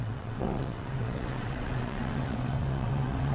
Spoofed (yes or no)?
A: yes